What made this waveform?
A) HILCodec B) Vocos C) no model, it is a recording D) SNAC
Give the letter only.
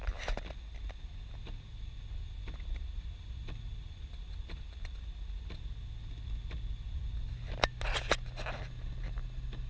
C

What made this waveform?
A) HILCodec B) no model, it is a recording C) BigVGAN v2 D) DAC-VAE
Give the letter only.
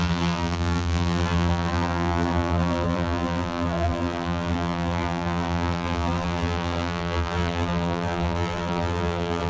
C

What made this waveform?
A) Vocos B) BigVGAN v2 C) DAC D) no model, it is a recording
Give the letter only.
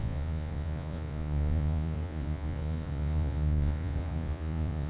A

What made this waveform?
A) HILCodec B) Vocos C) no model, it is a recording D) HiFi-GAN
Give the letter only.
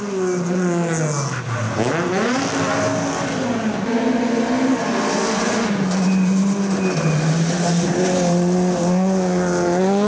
C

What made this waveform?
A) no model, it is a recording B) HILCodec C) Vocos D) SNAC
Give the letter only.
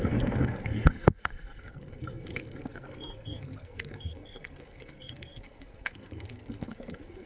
D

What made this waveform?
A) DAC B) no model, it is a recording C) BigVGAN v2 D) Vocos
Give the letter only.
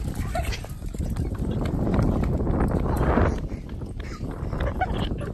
C